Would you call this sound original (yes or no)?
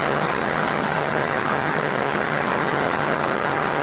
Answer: no